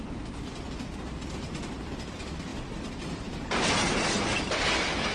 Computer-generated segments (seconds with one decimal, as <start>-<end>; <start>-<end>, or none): none